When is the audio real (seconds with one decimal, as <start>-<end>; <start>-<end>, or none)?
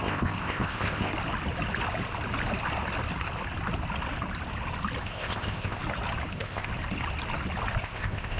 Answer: 1.1-5.0; 5.8-6.3; 6.7-7.8